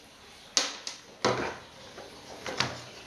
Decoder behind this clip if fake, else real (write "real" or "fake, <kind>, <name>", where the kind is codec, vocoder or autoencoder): real